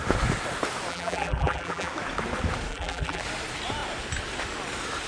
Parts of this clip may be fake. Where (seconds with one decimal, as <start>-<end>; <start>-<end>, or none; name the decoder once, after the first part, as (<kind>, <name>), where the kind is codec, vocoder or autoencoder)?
0.9-1.9 (vocoder, BigVGAN v2); 2.7-3.2